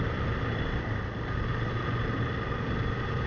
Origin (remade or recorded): recorded